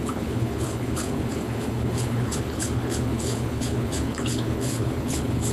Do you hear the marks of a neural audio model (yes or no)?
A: yes